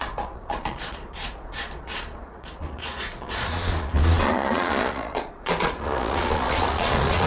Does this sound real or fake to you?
fake